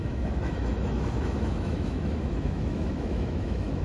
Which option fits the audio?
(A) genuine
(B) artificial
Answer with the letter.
B